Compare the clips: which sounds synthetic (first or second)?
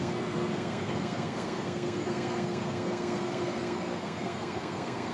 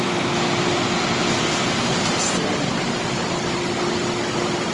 first